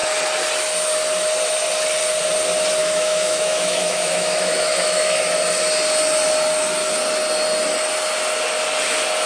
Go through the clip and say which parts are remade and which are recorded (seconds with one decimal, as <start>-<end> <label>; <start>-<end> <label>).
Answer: 0.0-2.8 recorded; 2.8-5.2 remade; 5.2-9.3 recorded